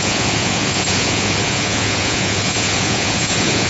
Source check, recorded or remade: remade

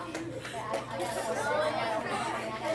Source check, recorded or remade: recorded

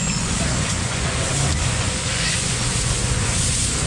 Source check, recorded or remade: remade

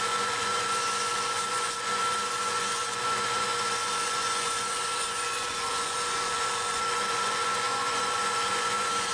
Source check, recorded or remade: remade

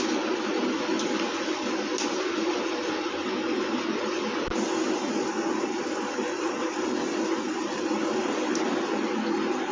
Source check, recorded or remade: recorded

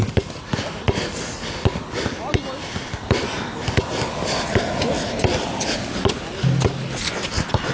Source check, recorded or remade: recorded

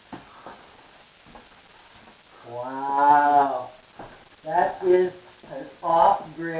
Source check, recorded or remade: recorded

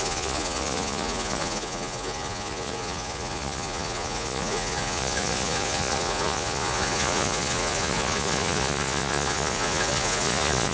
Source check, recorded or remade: remade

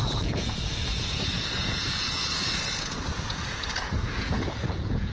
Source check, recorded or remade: remade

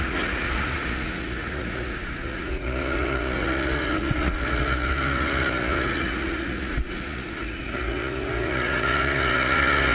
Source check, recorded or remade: remade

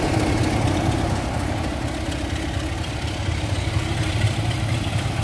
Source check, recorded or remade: recorded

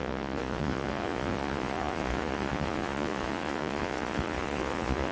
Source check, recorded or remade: remade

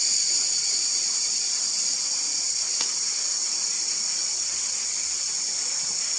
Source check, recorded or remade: recorded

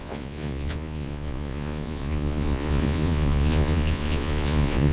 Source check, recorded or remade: remade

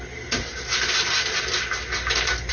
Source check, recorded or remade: recorded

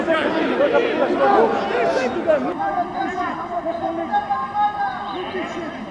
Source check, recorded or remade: recorded